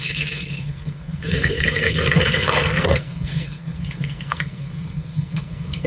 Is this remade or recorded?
remade